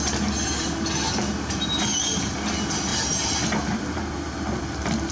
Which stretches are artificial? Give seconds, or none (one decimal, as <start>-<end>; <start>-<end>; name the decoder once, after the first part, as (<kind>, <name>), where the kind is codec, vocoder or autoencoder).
2.9-5.1 (vocoder, BigVGAN v2)